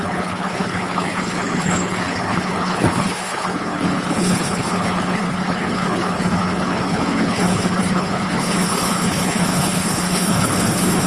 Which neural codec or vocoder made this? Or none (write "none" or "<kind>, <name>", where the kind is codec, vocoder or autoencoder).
codec, HILCodec